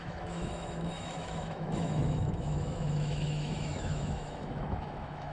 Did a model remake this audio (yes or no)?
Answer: yes